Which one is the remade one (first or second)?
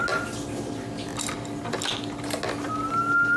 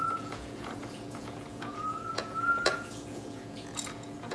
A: second